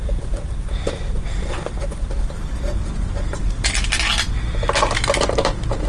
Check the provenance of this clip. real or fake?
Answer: real